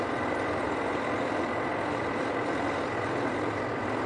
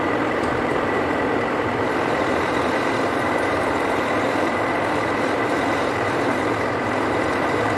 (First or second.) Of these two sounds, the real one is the first